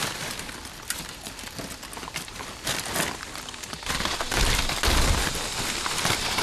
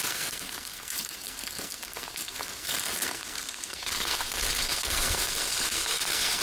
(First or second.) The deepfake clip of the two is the second